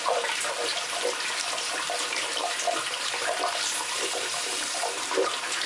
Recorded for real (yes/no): no